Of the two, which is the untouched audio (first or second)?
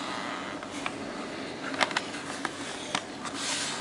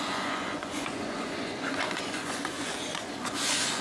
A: first